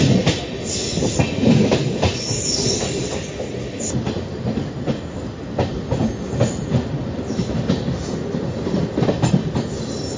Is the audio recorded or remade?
recorded